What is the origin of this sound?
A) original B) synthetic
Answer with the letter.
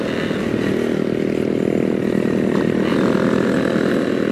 A